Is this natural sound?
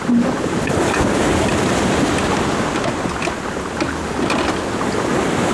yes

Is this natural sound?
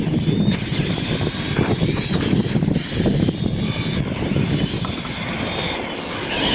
yes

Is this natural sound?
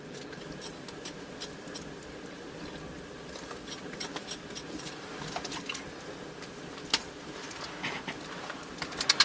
yes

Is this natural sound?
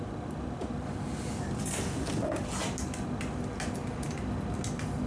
yes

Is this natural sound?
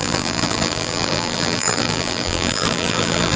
no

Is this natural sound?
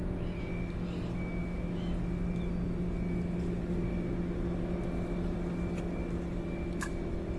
yes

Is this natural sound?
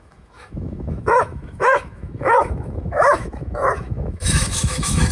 no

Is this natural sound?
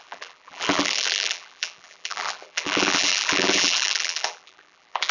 no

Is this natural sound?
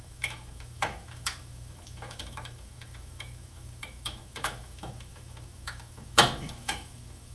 no